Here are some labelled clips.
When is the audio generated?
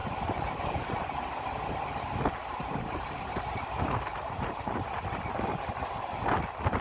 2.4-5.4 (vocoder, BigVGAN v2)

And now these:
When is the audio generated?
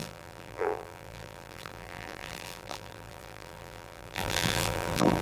0.0-5.2 (vocoder, BigVGAN v2)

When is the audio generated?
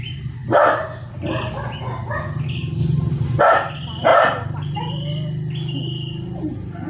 2.8-3.4 (vocoder, BigVGAN v2); 4.1-5.1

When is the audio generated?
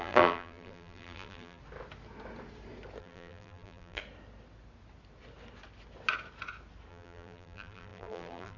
0.0-1.6 (vocoder, BigVGAN v2); 3.0-4.0; 6.9-8.6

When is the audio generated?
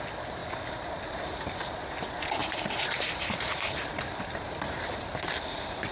2.4-5.9 (vocoder, BigVGAN v2)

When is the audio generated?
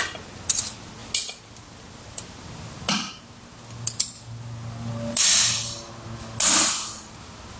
none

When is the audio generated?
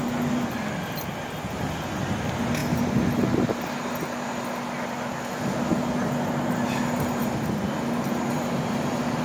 none